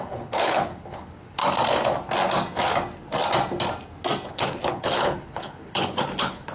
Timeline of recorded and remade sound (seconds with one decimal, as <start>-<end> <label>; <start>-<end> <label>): 0.0-1.4 remade; 1.4-4.3 recorded; 4.3-6.5 remade